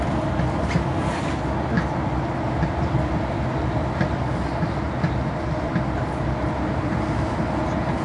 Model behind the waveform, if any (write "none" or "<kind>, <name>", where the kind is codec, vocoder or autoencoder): vocoder, BigVGAN v2